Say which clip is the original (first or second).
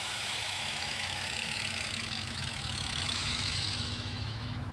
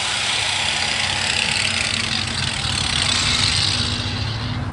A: second